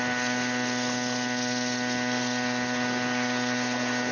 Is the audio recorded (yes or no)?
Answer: yes